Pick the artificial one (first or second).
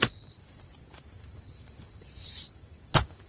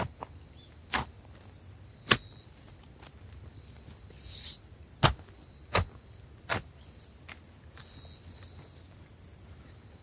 first